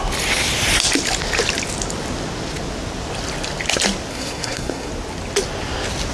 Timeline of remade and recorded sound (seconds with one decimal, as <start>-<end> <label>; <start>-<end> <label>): 0.0-4.1 recorded; 4.1-4.9 remade; 4.9-6.1 recorded